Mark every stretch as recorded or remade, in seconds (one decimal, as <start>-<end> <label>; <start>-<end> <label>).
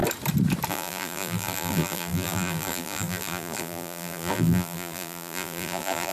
0.0-0.7 recorded; 0.7-6.1 remade